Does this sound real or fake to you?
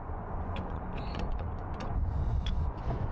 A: fake